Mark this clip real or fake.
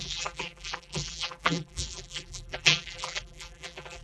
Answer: fake